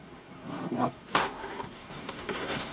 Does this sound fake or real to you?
fake